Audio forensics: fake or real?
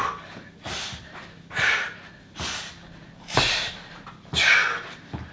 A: real